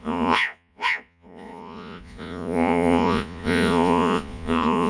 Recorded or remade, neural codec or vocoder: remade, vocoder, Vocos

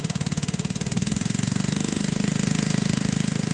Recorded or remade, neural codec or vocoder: remade, autoencoder, DAC-VAE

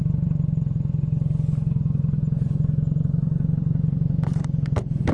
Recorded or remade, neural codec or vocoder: remade, vocoder, BigVGAN v2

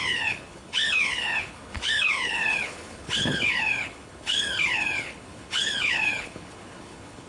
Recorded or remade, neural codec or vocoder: remade, codec, HILCodec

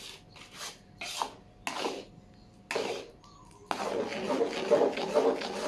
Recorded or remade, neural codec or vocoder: recorded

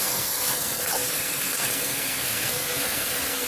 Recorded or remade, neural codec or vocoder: remade, codec, SNAC